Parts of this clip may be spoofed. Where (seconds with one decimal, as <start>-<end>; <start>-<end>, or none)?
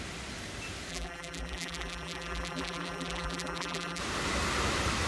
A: 0.9-4.0